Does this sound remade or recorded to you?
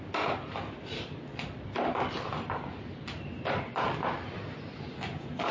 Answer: recorded